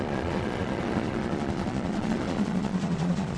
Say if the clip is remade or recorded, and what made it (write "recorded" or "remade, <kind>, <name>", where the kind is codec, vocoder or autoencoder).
remade, vocoder, Vocos